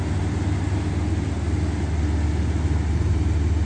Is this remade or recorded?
recorded